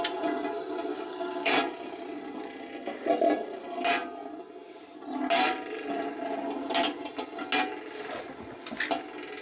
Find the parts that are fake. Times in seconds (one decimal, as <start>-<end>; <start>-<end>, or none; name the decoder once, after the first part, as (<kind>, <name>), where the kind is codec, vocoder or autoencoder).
0.9-1.5 (codec, DAC)